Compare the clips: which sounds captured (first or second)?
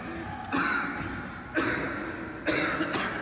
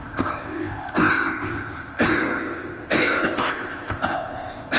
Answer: first